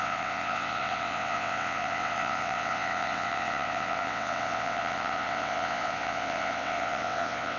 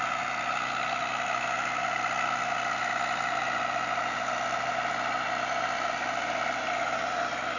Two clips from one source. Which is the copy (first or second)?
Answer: first